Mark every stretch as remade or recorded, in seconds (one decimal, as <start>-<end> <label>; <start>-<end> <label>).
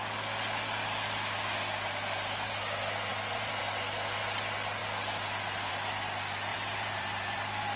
0.0-3.1 recorded; 3.1-3.6 remade; 3.6-6.5 recorded; 6.5-7.8 remade